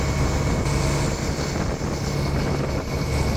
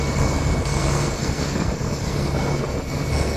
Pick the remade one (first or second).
second